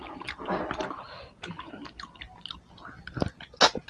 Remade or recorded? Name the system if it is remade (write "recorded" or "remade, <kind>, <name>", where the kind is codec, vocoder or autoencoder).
recorded